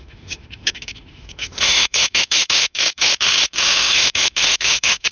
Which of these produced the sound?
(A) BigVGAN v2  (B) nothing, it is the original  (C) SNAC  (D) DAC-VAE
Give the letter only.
D